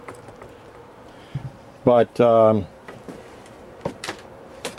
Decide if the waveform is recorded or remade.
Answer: remade